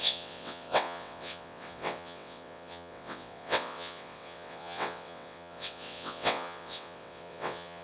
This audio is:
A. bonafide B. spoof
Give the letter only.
B